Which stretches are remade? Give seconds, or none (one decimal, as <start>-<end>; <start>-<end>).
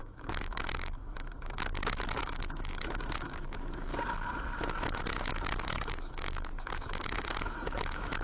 0.0-3.9; 4.6-8.2